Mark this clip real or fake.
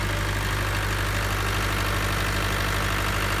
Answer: real